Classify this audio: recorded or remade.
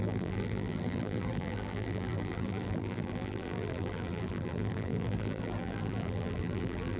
remade